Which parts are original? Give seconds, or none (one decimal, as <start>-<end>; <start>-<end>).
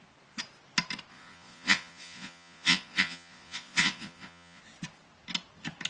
0.0-1.1; 4.6-5.9